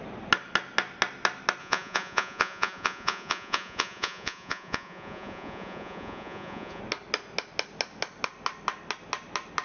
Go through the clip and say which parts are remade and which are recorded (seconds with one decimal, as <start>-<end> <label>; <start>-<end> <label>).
0.0-1.6 recorded; 1.6-6.8 remade; 6.8-9.6 recorded